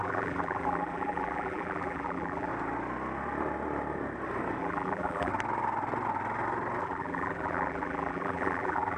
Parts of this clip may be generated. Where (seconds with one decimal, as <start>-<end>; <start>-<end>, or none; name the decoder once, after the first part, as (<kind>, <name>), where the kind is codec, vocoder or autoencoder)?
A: 0.0-2.5 (vocoder, BigVGAN v2); 4.6-5.3; 6.8-9.0